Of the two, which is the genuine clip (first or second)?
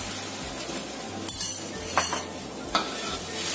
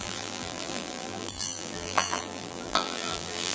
first